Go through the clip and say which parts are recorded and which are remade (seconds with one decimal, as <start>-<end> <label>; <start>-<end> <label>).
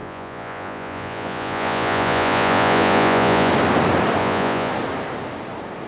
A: 0.0-3.5 remade; 3.5-4.2 recorded; 4.2-4.7 remade; 4.7-5.9 recorded